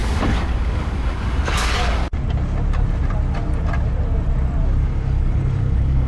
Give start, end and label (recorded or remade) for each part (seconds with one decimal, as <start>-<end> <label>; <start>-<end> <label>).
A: 0.0-2.0 remade; 2.0-4.8 recorded; 4.8-6.1 remade